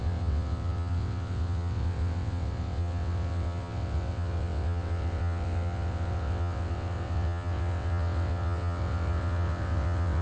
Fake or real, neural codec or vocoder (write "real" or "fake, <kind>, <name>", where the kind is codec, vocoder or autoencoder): fake, vocoder, WaveNeXt